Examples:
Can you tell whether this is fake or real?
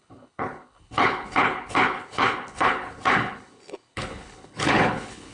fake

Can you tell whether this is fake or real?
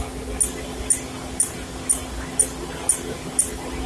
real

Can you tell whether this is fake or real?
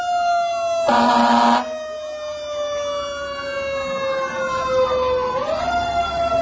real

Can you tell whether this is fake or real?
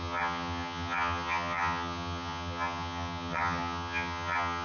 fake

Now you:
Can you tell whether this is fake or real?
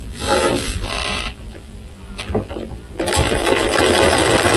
fake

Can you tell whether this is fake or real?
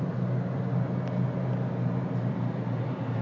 real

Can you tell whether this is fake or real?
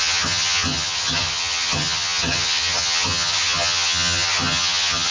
fake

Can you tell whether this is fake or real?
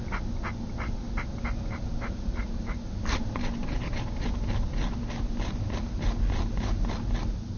real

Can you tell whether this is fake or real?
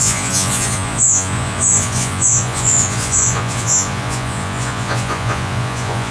fake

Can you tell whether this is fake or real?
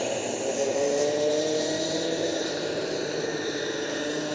fake